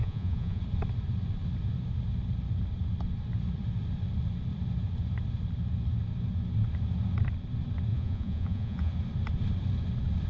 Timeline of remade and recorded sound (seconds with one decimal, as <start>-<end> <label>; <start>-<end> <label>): 0.0-0.6 remade; 0.6-7.9 recorded; 7.9-8.9 remade; 8.9-10.3 recorded